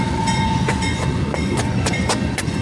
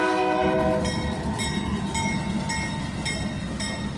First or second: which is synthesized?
first